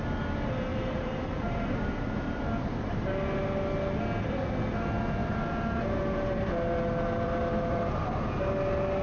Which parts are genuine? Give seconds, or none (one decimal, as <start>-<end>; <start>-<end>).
0.0-0.7; 2.4-5.2; 8.0-9.0